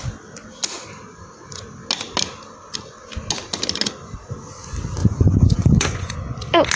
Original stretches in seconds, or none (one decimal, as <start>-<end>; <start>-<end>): 0.0-5.0; 6.1-6.8